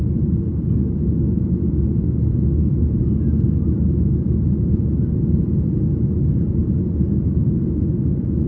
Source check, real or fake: real